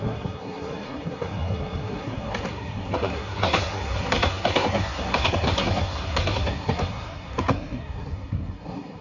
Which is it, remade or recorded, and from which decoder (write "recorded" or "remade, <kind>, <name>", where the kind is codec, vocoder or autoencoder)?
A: remade, codec, SNAC